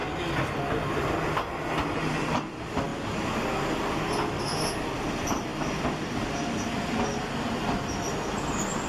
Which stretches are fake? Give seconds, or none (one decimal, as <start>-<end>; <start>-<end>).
none